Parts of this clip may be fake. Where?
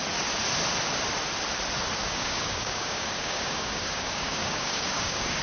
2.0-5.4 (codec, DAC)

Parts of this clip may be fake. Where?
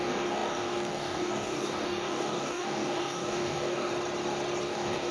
0.0-3.9 (codec, DAC); 4.6-5.1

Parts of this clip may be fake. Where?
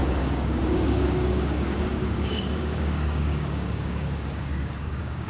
0.0-5.3 (codec, DAC)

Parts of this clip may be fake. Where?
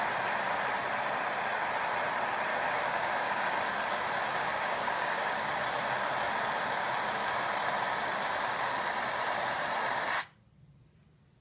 2.5-3.5 (codec, DAC); 4.5-5.5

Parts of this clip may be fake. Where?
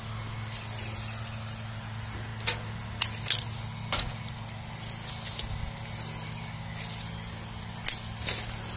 none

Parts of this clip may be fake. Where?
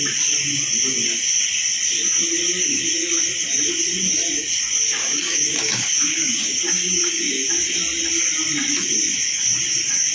5.0-7.5 (codec, DAC)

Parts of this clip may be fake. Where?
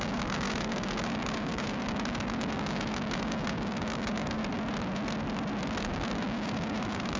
0.0-4.4 (codec, DAC); 5.8-7.2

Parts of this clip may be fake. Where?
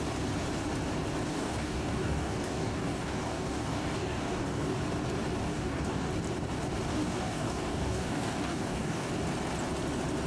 1.3-4.8 (codec, DAC); 5.5-6.1; 6.9-9.1